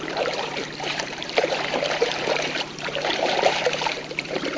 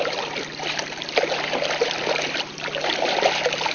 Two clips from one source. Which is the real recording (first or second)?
second